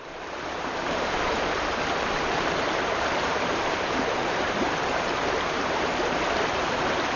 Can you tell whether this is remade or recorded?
remade